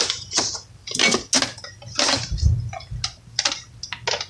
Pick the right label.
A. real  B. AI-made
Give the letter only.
A